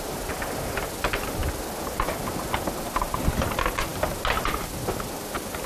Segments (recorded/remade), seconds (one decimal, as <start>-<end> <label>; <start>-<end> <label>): 0.0-5.7 recorded